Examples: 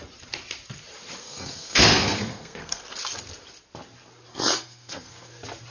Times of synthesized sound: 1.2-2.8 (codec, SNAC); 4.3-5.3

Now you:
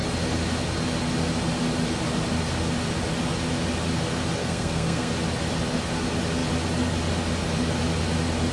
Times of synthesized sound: 4.4-5.1 (codec, SNAC)

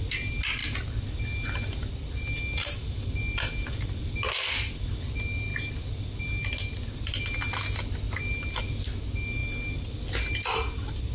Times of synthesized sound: none